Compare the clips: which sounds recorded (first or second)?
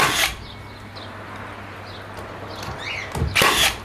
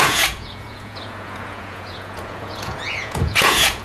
first